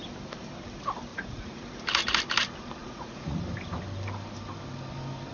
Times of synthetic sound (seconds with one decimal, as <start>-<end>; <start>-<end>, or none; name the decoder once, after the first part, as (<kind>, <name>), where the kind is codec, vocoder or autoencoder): 1.1-1.6 (vocoder, Vocos); 2.8-3.4